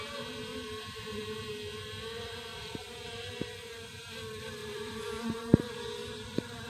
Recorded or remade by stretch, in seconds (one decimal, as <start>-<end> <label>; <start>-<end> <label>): 0.0-0.5 recorded; 0.5-1.5 remade; 1.5-2.5 recorded; 2.5-3.3 remade; 3.3-4.6 recorded; 4.6-5.6 remade; 5.6-6.0 recorded; 6.0-6.7 remade